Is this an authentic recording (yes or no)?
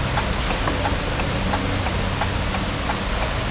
yes